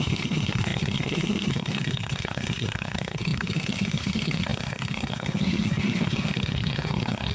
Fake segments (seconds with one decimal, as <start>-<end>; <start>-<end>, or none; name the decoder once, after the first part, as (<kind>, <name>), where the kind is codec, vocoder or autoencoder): 0.0-7.3 (codec, SNAC)